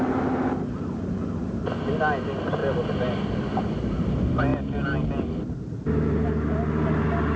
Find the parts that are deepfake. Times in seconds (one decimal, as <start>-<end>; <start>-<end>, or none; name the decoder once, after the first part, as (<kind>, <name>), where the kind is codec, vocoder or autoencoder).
none